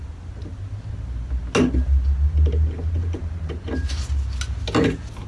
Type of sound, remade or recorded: recorded